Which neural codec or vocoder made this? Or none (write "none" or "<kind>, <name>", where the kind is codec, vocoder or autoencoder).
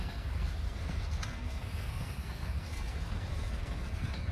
codec, SNAC